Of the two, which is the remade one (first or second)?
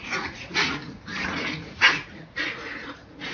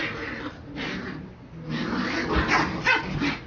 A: first